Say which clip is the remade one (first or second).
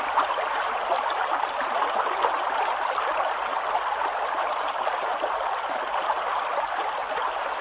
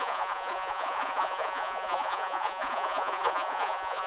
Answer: second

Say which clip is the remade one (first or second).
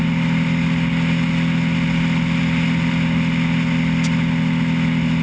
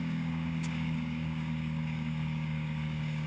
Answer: second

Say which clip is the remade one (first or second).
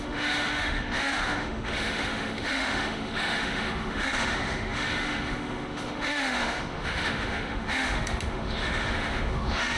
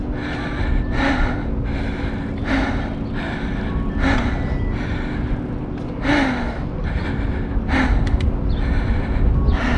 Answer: first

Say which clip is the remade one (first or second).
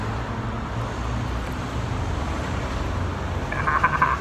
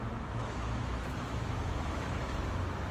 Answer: second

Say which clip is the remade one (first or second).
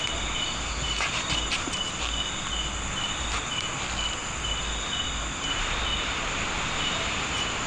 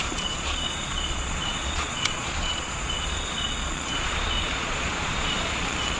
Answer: second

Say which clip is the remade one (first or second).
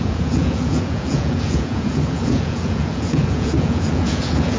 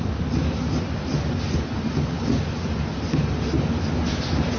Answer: first